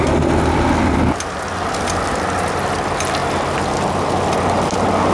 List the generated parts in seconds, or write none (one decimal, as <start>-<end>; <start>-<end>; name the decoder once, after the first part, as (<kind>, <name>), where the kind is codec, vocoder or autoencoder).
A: none